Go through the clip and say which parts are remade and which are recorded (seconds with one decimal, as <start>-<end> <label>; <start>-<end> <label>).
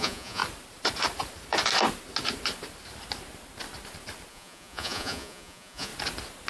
0.0-0.4 remade; 0.4-4.3 recorded; 4.3-5.9 remade; 5.9-6.5 recorded